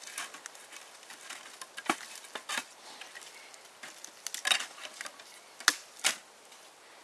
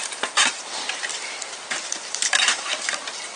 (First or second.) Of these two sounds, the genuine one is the first